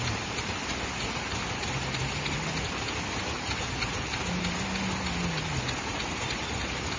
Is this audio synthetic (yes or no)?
no